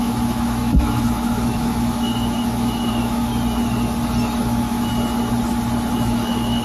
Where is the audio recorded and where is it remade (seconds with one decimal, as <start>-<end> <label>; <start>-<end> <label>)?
0.0-3.3 remade; 3.3-4.4 recorded; 4.4-4.9 remade; 4.9-5.9 recorded; 5.9-6.6 remade